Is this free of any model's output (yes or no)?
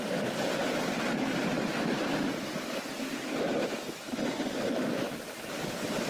yes